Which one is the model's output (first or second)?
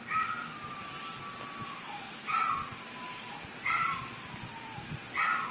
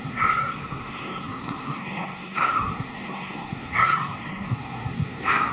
second